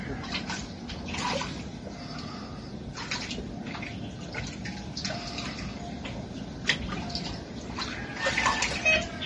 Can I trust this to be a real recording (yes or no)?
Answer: yes